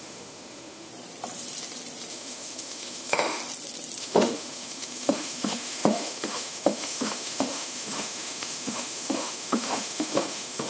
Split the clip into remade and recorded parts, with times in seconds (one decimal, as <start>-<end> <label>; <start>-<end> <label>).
0.0-0.9 remade; 0.9-2.1 recorded; 2.1-3.4 remade; 3.4-4.0 recorded; 4.0-10.7 remade